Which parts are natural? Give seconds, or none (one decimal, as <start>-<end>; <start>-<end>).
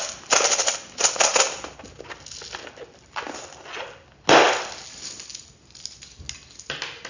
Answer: 0.0-7.1